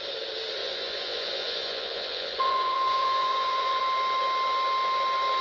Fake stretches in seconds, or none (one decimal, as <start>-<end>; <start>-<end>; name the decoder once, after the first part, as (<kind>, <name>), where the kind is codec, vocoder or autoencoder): 0.6-3.8 (vocoder, Vocos)